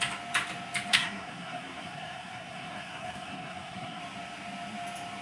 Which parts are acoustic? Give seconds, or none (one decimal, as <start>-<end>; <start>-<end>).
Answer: 0.0-0.9; 4.0-5.2